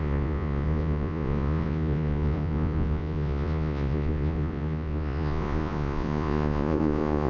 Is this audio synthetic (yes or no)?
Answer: yes